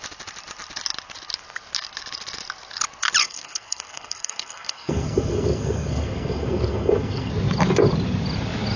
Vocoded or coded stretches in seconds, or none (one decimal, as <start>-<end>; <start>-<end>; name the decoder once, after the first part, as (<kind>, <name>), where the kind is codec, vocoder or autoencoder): 3.2-7.3 (codec, SNAC)